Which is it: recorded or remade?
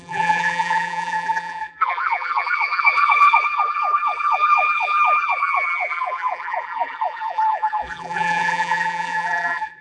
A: remade